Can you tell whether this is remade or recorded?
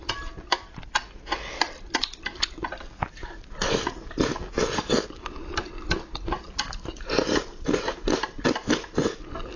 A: recorded